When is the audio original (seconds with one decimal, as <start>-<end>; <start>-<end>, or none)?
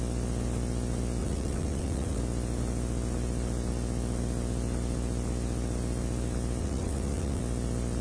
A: 0.0-1.2; 2.2-6.6; 7.4-8.0